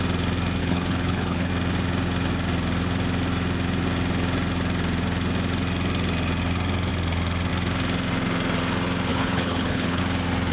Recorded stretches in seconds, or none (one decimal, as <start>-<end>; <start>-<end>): 0.0-0.6; 1.5-9.1; 10.0-10.5